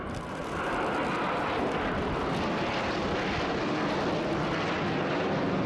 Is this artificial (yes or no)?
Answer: no